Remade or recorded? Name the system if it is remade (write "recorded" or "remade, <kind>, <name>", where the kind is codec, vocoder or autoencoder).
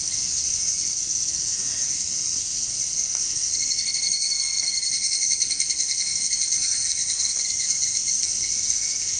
remade, codec, SNAC